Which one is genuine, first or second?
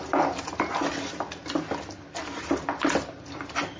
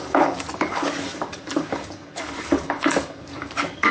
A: first